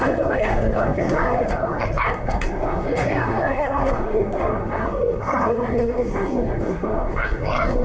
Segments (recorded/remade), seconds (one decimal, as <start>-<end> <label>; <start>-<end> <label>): 0.0-7.8 remade